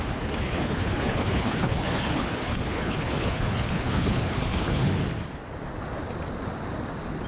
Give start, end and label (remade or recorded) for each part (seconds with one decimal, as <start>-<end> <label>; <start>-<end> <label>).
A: 0.0-4.9 remade; 4.9-7.3 recorded